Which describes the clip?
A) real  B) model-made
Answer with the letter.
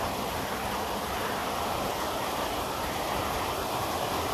A